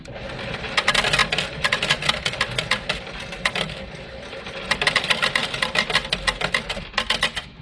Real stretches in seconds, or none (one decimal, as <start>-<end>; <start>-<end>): 0.0-7.6